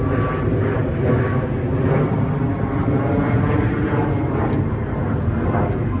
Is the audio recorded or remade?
recorded